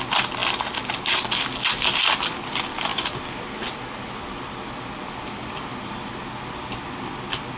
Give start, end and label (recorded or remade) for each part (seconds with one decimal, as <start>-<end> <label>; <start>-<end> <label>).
0.0-7.6 recorded